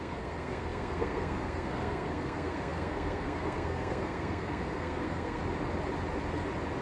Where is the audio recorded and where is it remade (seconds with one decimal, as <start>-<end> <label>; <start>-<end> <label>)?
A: 0.0-5.4 remade; 5.4-6.8 recorded